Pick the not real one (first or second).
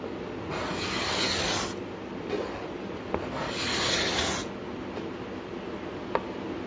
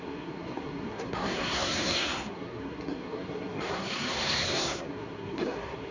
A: second